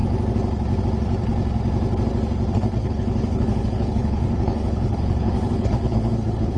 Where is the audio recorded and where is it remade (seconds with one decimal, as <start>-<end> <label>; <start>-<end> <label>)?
0.0-2.8 recorded; 2.8-6.6 remade

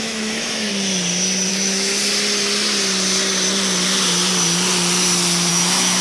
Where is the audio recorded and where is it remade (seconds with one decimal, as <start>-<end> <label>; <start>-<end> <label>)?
0.0-0.7 remade; 0.7-1.5 recorded; 1.5-1.9 remade; 1.9-5.5 recorded; 5.5-6.0 remade

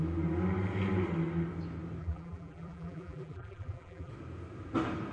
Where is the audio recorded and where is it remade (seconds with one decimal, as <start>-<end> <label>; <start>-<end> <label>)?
0.0-2.0 recorded; 2.0-4.1 remade; 4.1-5.1 recorded

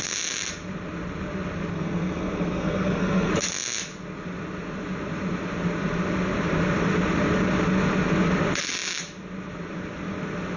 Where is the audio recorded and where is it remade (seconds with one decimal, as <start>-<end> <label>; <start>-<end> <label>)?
0.0-1.7 recorded; 1.7-3.3 remade; 3.3-10.6 recorded

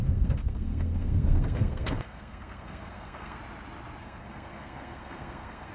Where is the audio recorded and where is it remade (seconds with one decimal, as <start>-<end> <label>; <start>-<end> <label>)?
0.0-3.4 remade; 3.4-4.0 recorded; 4.0-5.7 remade

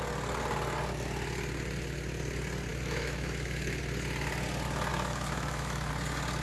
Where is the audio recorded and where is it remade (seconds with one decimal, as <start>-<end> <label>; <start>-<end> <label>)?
0.0-2.7 recorded; 2.7-3.8 remade; 3.8-4.9 recorded; 4.9-5.9 remade; 5.9-6.4 recorded

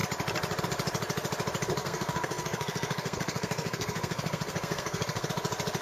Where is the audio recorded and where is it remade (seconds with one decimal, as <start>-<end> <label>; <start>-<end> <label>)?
0.0-1.8 recorded; 1.8-5.3 remade; 5.3-5.8 recorded

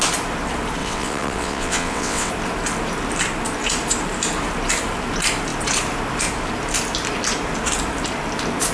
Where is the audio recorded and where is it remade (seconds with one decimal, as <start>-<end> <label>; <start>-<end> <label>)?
0.0-0.8 recorded; 0.8-2.3 remade; 2.3-8.7 recorded